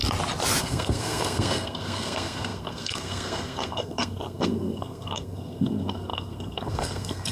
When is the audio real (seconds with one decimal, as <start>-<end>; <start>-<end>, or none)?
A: 0.0-0.6